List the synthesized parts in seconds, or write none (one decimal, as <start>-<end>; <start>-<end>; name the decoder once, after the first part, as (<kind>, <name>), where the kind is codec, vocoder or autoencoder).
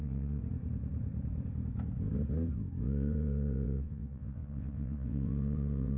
0.0-0.4 (vocoder, WaveNeXt); 2.8-6.0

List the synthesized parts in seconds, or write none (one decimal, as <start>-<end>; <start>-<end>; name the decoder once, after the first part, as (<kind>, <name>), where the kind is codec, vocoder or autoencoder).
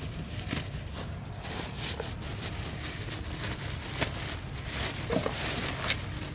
none